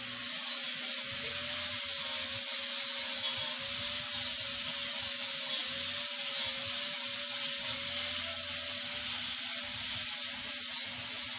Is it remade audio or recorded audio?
recorded